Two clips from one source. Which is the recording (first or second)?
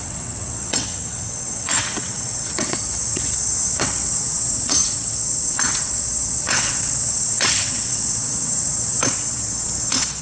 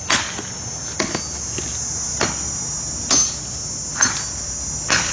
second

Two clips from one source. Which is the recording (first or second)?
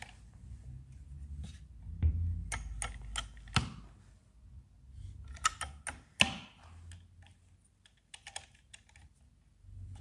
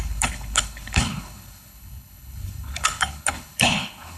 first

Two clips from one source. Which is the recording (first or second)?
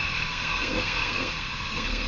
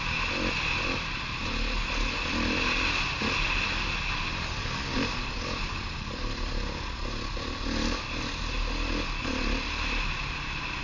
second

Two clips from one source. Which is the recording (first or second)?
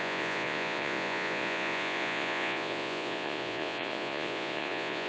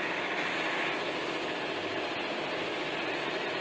second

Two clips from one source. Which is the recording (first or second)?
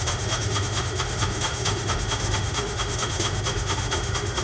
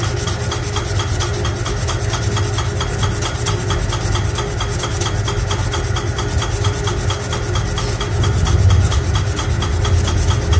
second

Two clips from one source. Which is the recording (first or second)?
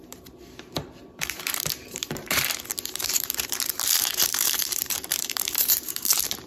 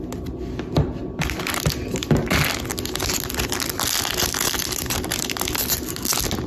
second